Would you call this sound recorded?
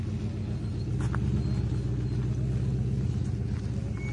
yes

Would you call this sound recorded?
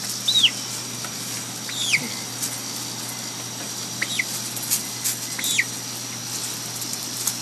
yes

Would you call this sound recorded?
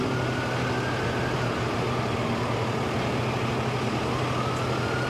yes